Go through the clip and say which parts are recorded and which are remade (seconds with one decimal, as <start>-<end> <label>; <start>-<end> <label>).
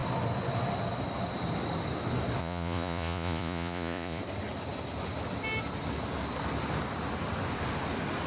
0.0-2.4 recorded; 2.4-4.2 remade; 4.2-8.3 recorded